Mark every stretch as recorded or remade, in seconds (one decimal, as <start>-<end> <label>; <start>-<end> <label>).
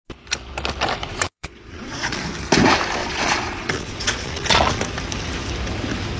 0.0-1.1 recorded; 1.1-2.2 remade; 2.2-3.0 recorded; 3.0-4.8 remade; 4.8-6.2 recorded